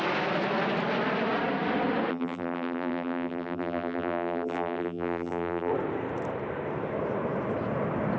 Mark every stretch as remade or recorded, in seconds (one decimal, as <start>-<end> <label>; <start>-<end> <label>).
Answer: 0.0-2.1 recorded; 2.1-5.7 remade; 5.7-8.2 recorded

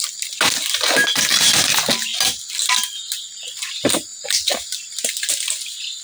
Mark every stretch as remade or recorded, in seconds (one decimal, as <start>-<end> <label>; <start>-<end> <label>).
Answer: 0.0-4.1 recorded; 4.1-5.3 remade; 5.3-6.0 recorded

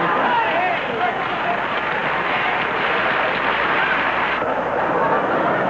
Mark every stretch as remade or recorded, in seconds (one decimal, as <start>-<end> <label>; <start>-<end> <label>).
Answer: 0.0-5.7 recorded

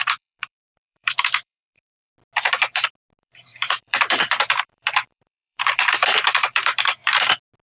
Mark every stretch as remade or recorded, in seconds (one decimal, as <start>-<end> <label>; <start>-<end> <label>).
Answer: 0.0-2.1 remade; 2.1-3.2 recorded; 3.2-7.0 remade; 7.0-7.7 recorded